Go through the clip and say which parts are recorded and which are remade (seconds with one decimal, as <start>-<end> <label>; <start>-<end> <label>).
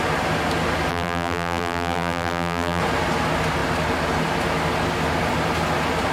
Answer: 0.0-0.9 recorded; 0.9-2.8 remade; 2.8-6.1 recorded